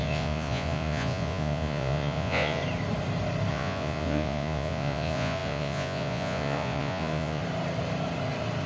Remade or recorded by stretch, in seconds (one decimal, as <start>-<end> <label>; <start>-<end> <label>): 0.0-2.6 remade; 2.6-3.5 recorded; 3.5-7.4 remade; 7.4-8.7 recorded